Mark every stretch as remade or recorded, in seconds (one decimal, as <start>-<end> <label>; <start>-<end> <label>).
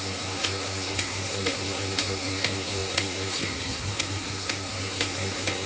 0.0-5.7 remade